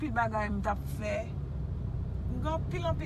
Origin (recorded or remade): remade